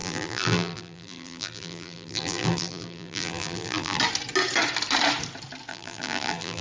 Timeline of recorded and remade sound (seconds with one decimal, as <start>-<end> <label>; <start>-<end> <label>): 0.0-4.0 remade; 4.0-5.7 recorded; 5.7-6.6 remade